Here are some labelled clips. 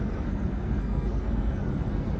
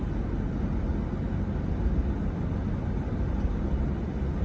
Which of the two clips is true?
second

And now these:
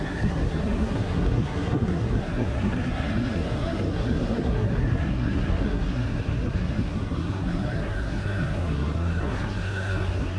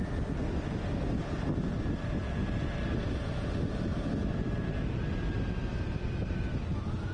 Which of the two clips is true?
second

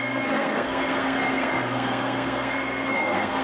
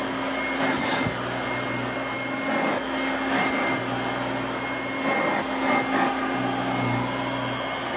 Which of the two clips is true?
second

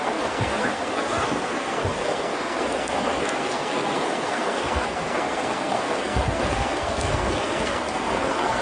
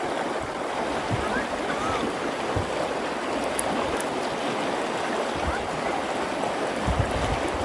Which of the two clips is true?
second